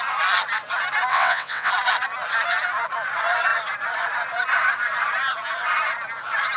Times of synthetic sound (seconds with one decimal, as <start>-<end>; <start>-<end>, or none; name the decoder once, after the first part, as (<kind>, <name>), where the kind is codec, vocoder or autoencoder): 1.1-1.7 (vocoder, WaveNeXt)